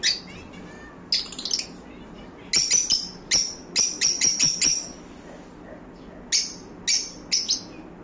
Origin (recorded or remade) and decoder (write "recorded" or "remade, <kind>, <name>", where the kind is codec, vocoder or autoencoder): recorded